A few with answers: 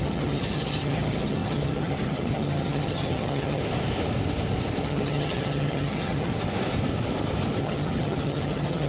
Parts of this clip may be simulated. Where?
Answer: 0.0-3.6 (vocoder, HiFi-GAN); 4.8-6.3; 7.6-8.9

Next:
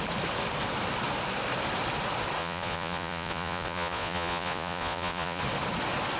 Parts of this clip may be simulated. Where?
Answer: 2.4-5.4 (vocoder, Vocos)